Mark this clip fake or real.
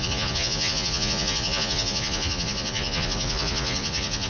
fake